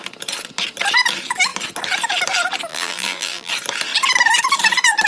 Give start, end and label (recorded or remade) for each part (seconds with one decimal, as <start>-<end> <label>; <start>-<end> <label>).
0.0-2.7 recorded; 2.7-3.5 remade; 3.5-5.1 recorded